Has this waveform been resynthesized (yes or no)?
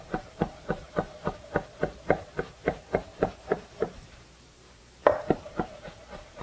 yes